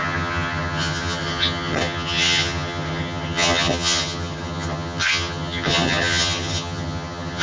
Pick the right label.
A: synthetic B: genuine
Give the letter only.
A